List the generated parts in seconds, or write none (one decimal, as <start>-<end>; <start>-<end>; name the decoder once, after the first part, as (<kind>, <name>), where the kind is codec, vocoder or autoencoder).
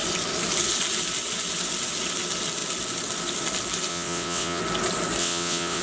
3.9-4.6 (vocoder, WaveNeXt); 5.2-5.8